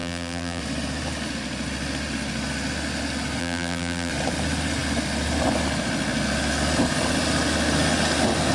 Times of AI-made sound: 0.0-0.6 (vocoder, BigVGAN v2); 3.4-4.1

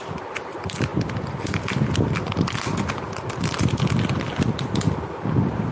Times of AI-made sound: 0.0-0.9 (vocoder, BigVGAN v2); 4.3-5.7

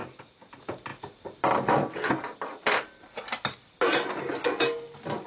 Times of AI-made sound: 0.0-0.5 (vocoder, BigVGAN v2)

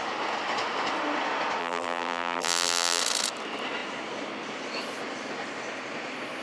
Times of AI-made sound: 1.6-3.0 (vocoder, BigVGAN v2)